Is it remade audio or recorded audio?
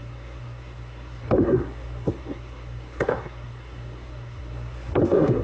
remade